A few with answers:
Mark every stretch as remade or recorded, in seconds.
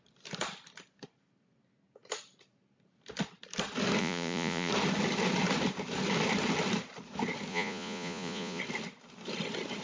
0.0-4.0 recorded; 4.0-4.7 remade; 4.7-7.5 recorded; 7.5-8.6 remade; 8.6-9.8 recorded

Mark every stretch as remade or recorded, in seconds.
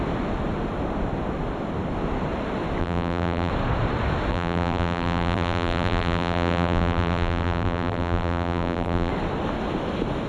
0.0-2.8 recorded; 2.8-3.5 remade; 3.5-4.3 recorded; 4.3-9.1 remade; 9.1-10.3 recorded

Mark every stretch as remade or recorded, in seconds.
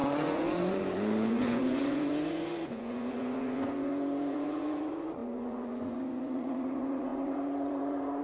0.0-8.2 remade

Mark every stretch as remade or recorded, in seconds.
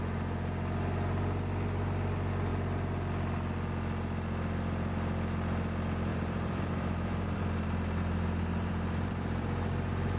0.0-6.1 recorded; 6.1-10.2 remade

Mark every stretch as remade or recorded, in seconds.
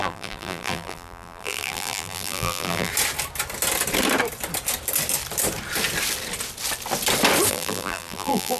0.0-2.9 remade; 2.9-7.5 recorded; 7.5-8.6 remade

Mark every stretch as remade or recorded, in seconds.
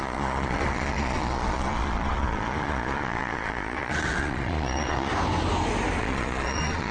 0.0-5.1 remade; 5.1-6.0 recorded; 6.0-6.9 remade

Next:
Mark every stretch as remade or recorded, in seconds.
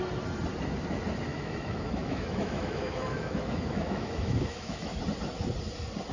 0.0-1.3 recorded; 1.3-5.0 remade; 5.0-6.1 recorded